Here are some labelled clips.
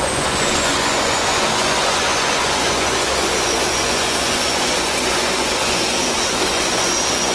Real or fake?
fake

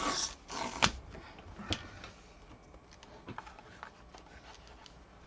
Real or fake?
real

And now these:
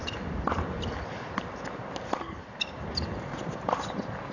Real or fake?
real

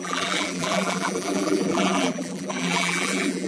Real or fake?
fake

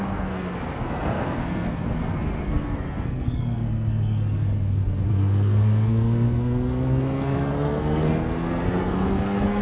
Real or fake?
fake